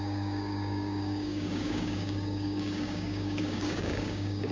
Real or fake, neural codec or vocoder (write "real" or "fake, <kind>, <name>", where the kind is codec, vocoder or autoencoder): fake, codec, DAC